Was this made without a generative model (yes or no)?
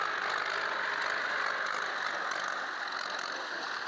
yes